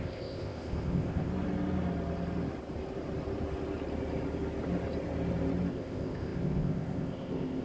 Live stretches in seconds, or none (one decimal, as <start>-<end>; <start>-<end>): 1.3-5.7